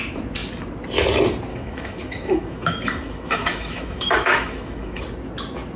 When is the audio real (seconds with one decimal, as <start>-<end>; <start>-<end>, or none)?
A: 0.0-1.5; 5.0-5.8